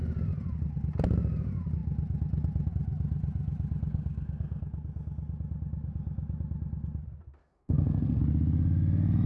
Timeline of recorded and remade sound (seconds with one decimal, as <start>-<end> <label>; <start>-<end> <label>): 0.0-3.9 recorded; 3.9-4.6 remade; 4.6-7.4 recorded; 7.4-8.2 remade; 8.2-9.3 recorded